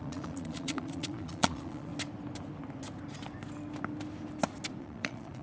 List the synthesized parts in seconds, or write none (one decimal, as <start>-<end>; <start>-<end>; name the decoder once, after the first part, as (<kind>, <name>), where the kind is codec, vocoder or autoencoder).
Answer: 0.0-1.9 (vocoder, Vocos); 4.8-5.4